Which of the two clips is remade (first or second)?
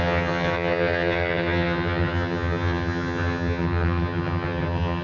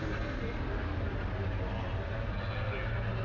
first